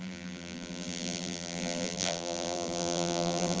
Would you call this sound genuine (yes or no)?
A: no